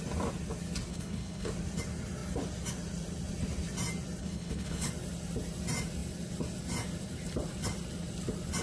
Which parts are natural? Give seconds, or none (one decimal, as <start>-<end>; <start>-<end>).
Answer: 0.0-0.9; 1.5-4.2; 4.9-8.6